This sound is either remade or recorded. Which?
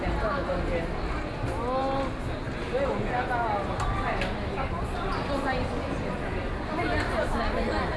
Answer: recorded